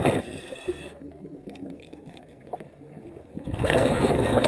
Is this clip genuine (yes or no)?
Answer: no